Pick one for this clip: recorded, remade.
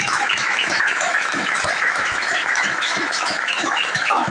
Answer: remade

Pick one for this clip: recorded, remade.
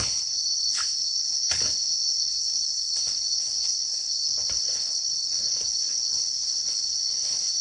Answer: remade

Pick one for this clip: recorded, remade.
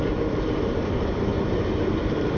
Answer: remade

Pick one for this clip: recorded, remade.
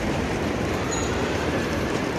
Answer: remade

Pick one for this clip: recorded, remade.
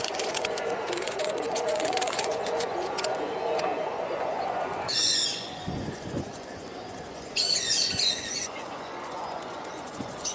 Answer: remade